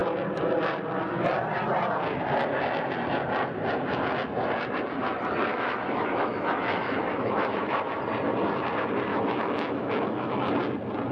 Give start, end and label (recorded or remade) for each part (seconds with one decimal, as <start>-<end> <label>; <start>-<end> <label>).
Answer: 0.0-5.5 recorded; 5.5-8.0 remade; 8.0-9.1 recorded; 9.1-10.5 remade; 10.5-11.1 recorded